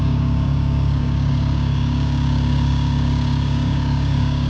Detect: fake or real fake